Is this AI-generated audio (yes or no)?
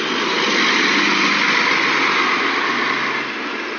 no